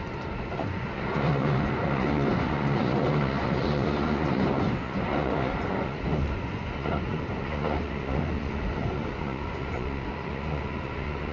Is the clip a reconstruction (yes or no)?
yes